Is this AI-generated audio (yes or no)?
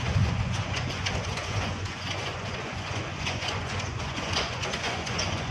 yes